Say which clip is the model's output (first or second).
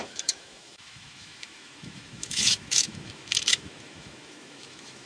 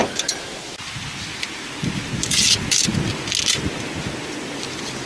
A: first